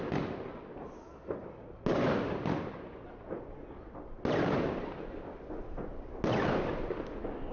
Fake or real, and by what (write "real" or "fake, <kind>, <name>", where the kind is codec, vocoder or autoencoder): real